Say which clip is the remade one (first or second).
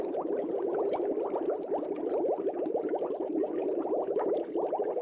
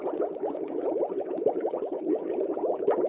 second